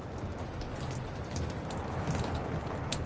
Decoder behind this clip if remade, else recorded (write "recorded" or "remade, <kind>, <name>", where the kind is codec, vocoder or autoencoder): recorded